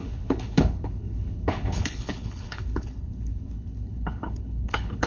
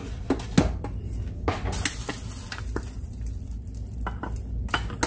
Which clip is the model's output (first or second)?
first